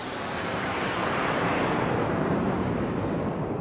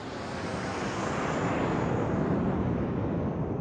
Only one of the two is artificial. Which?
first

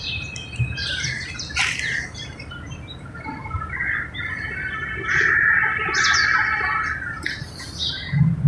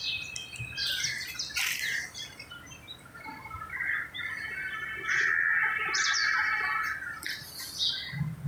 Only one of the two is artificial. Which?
first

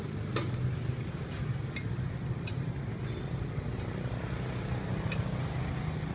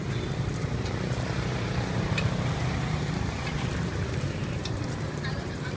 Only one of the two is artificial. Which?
second